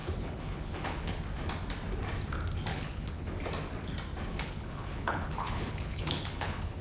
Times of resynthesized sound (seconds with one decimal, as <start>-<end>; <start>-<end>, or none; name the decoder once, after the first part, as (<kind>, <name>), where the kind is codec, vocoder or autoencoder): 0.0-1.2 (codec, HILCodec); 2.7-3.3; 4.3-6.8